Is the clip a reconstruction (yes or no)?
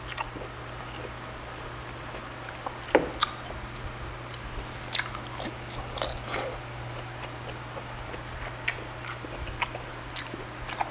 no